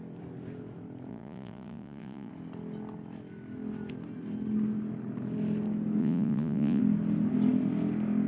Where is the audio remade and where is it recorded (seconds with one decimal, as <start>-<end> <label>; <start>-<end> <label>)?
0.0-1.1 recorded; 1.1-2.3 remade; 2.3-6.0 recorded; 6.0-6.8 remade; 6.8-8.3 recorded